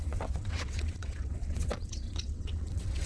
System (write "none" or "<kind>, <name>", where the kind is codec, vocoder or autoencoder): vocoder, WaveNeXt